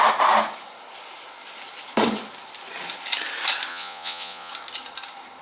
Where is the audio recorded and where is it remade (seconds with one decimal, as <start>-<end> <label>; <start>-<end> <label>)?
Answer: 0.0-3.7 recorded; 3.7-4.5 remade; 4.5-5.4 recorded